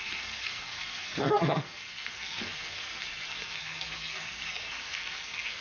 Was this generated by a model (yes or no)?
yes